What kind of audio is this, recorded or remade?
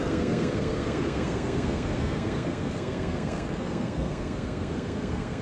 remade